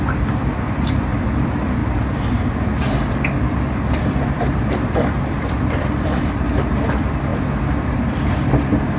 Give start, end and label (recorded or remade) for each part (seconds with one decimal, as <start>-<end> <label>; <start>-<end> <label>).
0.0-1.8 remade; 1.8-3.9 recorded; 3.9-9.0 remade